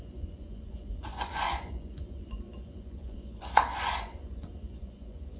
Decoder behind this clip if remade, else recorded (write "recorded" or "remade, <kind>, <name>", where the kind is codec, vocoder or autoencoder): remade, vocoder, Vocos